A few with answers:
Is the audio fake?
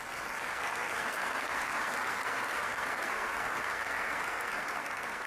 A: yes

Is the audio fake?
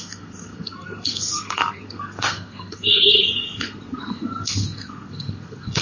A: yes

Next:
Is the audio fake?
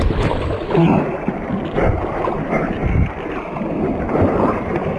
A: no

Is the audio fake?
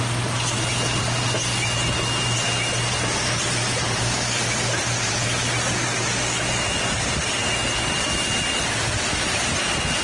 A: no